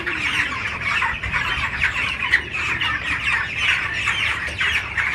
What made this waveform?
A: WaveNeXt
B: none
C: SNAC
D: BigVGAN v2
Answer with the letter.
D